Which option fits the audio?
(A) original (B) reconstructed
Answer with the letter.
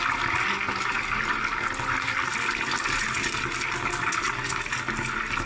A